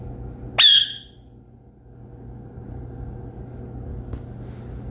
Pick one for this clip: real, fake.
real